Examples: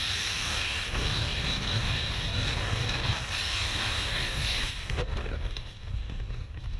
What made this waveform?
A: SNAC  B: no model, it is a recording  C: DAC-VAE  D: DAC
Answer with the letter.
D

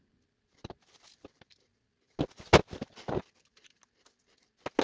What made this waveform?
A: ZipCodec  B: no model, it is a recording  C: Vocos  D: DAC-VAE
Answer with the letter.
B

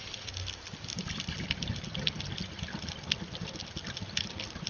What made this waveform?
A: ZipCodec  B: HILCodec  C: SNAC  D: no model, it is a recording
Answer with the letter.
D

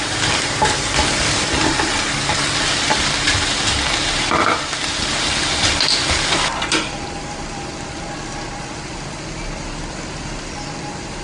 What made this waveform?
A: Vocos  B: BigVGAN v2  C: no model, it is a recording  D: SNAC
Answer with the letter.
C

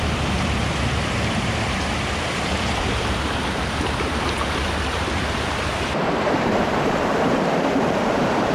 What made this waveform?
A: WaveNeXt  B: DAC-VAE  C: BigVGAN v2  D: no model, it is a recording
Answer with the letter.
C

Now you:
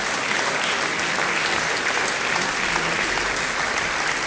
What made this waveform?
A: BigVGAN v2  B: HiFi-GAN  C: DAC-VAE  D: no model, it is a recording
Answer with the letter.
D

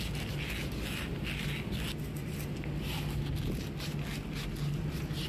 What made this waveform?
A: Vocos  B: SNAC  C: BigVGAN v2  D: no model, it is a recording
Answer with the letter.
D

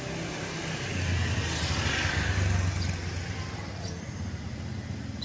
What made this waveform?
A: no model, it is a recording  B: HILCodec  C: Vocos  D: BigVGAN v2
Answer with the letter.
A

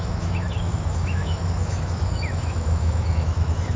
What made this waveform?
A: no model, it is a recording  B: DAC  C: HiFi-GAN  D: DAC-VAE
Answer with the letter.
D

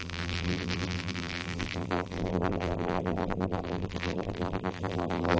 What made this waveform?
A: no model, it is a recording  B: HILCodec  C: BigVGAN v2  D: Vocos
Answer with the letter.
C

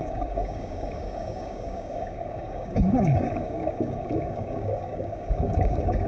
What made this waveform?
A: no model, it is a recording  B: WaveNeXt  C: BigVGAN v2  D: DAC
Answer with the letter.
D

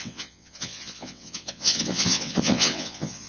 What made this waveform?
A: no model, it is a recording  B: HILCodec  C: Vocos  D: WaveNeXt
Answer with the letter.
D